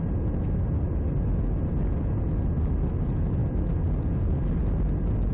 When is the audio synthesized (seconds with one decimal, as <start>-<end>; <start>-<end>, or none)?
none